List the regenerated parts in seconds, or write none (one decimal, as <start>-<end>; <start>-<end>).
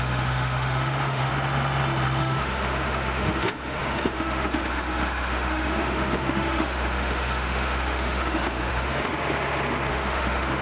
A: 0.0-1.3; 2.2-9.1; 9.9-10.6